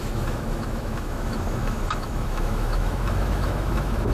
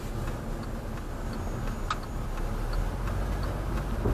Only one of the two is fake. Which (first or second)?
first